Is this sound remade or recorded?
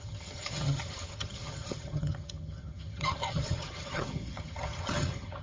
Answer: remade